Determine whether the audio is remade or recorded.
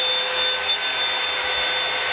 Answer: recorded